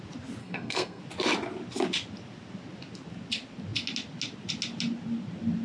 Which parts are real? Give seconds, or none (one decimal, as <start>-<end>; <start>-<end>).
0.0-0.4; 1.0-5.6